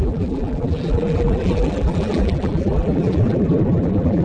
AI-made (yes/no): yes